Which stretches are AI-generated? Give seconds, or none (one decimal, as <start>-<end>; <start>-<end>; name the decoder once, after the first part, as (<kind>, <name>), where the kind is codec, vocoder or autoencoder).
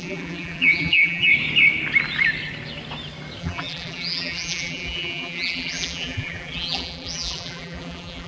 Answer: 0.0-1.3 (vocoder, BigVGAN v2); 3.4-8.3